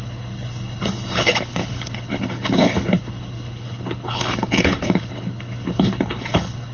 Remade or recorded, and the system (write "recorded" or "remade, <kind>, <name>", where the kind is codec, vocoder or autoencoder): remade, codec, HILCodec